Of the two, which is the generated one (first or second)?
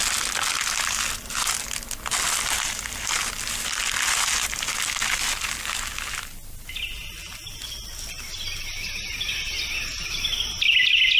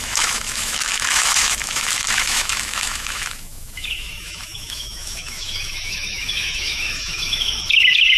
second